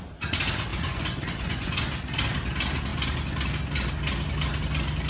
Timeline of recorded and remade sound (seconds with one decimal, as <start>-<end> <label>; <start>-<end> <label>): 0.0-0.7 recorded; 0.7-1.8 remade; 1.8-5.1 recorded